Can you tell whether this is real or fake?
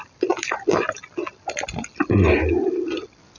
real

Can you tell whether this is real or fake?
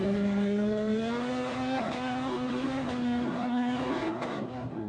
fake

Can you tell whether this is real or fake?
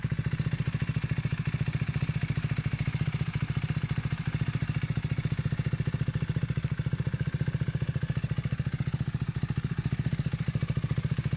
fake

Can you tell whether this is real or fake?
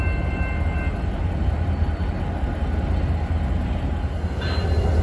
real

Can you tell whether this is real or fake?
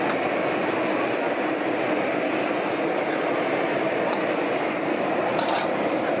real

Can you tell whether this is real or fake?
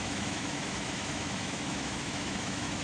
fake